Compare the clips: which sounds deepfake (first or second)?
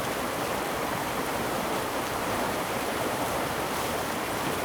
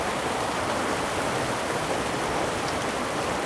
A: first